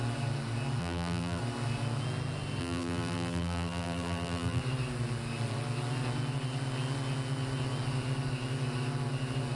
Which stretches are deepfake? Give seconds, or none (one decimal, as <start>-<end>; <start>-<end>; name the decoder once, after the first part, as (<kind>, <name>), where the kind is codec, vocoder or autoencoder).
0.8-1.4 (vocoder, BigVGAN v2); 2.6-4.6